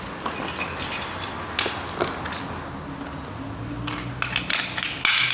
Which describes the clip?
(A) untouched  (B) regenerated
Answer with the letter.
A